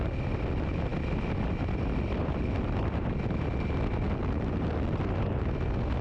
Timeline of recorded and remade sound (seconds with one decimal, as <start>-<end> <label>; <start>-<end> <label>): 0.0-6.0 recorded